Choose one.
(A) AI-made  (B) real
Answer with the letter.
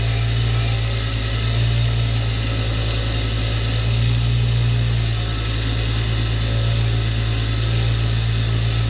B